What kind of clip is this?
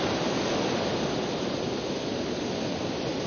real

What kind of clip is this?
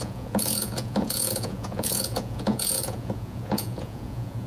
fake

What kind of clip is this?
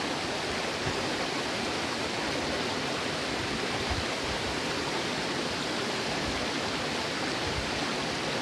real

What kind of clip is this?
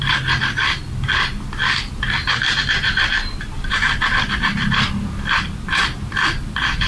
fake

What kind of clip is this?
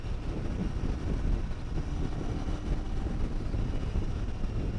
real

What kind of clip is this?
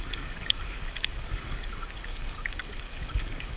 fake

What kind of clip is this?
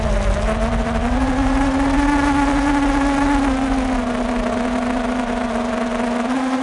real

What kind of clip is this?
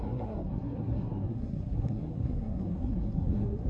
fake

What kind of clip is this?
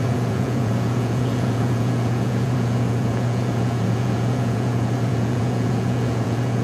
fake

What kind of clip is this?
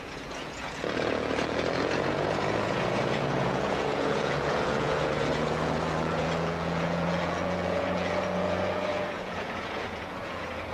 fake